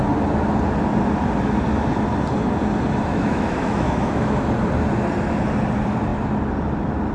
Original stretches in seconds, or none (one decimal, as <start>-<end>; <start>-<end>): 0.0-3.1; 4.3-7.1